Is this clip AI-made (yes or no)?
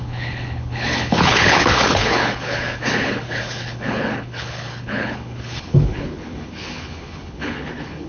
yes